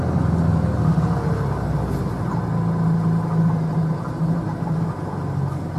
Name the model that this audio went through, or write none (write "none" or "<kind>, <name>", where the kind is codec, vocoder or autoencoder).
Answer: none